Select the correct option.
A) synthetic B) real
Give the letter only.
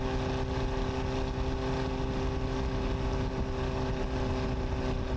B